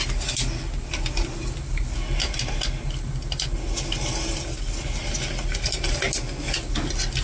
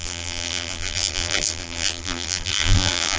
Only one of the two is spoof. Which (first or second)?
second